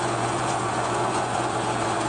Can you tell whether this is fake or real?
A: fake